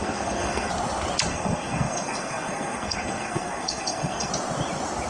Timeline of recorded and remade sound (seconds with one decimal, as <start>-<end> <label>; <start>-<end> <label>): 0.0-0.7 remade; 0.7-1.3 recorded; 1.3-4.3 remade; 4.3-5.1 recorded